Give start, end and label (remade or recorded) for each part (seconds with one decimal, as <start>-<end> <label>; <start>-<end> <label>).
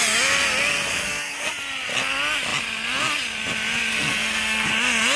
0.0-0.9 recorded; 0.9-1.5 remade; 1.5-3.9 recorded; 3.9-4.7 remade; 4.7-5.2 recorded